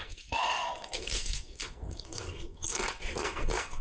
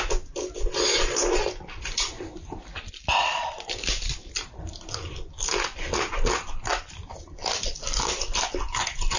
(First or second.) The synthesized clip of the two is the first